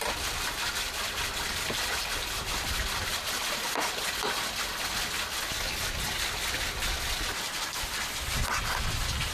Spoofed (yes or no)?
no